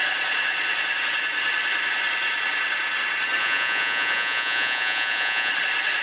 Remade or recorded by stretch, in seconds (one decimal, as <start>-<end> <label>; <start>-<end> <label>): 0.0-3.4 recorded; 3.4-5.5 remade; 5.5-6.0 recorded